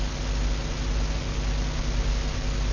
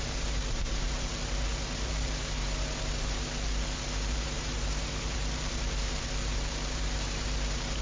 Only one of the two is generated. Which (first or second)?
second